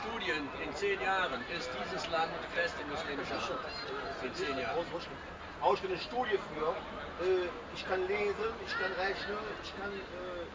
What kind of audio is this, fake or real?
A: real